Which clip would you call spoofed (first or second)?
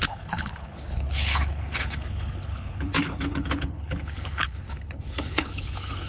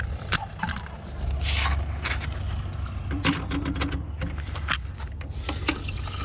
first